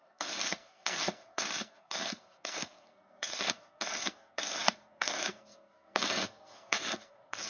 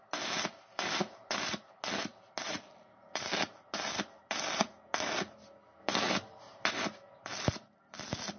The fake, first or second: first